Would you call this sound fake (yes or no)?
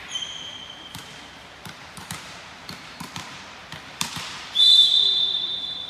yes